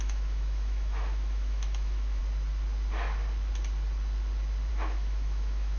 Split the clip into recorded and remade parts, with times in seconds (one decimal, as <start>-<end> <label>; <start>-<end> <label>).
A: 0.0-2.2 remade; 2.2-4.7 recorded; 4.7-5.8 remade